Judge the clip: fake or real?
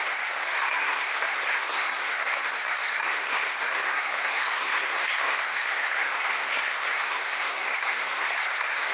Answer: fake